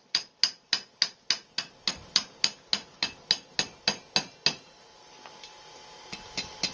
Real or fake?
real